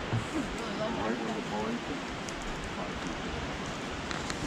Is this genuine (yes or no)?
yes